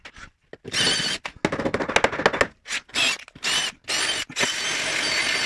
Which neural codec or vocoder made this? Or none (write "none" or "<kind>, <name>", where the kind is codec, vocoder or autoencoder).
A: none